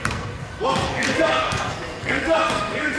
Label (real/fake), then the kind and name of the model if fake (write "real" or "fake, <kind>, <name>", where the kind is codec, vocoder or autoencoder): fake, codec, SNAC